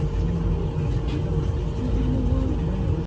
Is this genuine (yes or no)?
yes